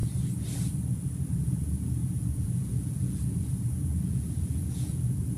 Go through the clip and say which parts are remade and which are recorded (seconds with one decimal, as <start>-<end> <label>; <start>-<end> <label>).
0.0-1.5 recorded; 1.5-5.4 remade